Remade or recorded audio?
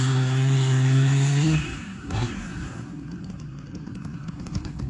remade